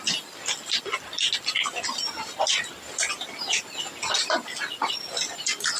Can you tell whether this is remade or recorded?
recorded